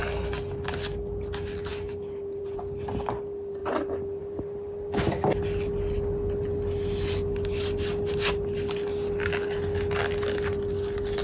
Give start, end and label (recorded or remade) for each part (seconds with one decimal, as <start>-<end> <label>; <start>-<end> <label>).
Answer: 0.0-11.2 recorded